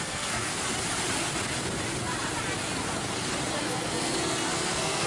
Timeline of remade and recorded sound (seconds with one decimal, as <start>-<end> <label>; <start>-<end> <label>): 0.0-0.5 remade; 0.5-3.6 recorded; 3.6-5.1 remade